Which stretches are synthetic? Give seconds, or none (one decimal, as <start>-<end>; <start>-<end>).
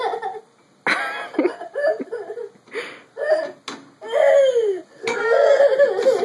5.0-5.6